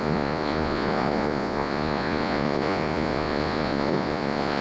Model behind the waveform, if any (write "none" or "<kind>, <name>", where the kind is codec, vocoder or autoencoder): vocoder, Vocos